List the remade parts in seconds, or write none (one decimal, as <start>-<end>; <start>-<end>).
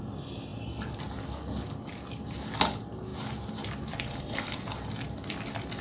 none